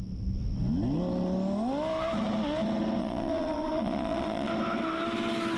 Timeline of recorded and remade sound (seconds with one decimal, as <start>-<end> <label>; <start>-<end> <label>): 0.0-3.0 recorded; 3.0-4.5 remade; 4.5-5.6 recorded